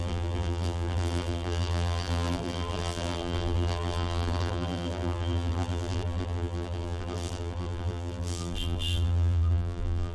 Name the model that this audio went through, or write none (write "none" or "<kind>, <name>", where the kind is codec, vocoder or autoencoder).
vocoder, BigVGAN v2